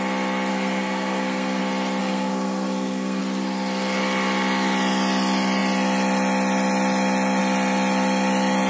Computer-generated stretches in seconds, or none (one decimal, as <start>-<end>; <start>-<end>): 0.5-1.6; 2.0-3.2